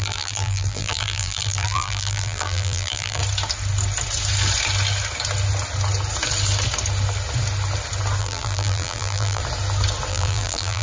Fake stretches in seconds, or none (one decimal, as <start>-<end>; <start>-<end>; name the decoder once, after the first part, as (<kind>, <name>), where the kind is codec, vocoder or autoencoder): 0.0-3.2 (vocoder, BigVGAN v2); 8.2-9.4; 10.1-10.8